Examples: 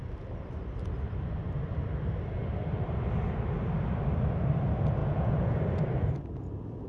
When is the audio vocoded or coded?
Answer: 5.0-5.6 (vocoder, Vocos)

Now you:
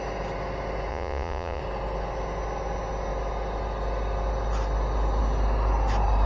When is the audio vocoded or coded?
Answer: 0.9-1.6 (vocoder, Vocos)

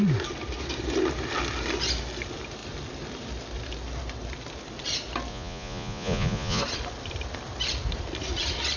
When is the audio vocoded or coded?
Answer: 5.3-6.6 (vocoder, Vocos)

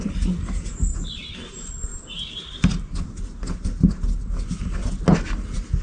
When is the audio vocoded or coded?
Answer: none

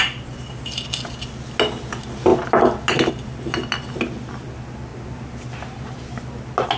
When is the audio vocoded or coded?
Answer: none

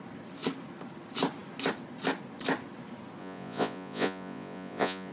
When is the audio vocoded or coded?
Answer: 3.2-5.1 (vocoder, Vocos)

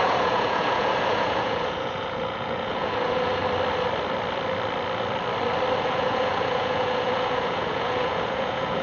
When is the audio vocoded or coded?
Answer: 0.0-3.4 (vocoder, Vocos); 5.8-8.8